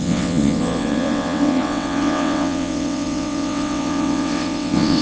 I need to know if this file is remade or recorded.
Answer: remade